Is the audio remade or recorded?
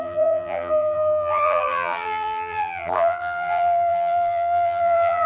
remade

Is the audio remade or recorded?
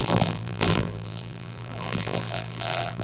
remade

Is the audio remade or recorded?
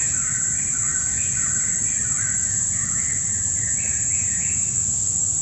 recorded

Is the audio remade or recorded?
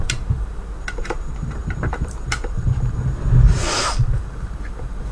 remade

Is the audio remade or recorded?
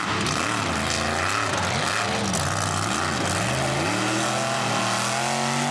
recorded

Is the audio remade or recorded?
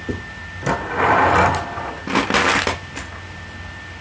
recorded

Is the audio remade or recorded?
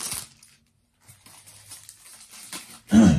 recorded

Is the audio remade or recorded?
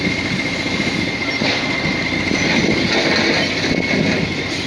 recorded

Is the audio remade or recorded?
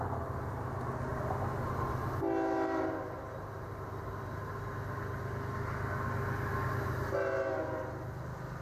recorded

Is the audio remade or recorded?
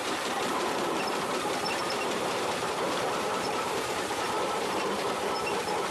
remade